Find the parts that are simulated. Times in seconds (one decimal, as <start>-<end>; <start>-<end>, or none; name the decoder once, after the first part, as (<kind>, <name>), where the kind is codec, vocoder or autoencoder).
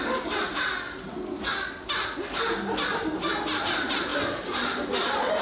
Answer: none